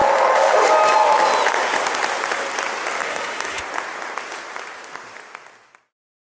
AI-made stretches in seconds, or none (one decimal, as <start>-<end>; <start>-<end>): 0.0-0.7; 3.0-3.6